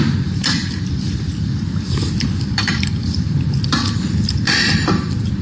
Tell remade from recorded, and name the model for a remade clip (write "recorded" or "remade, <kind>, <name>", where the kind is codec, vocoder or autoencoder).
remade, vocoder, BigVGAN v2